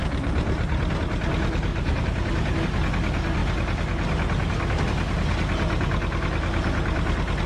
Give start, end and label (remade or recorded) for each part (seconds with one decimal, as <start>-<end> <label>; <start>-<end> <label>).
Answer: 0.0-0.9 remade; 0.9-1.7 recorded; 1.7-2.6 remade; 2.6-7.5 recorded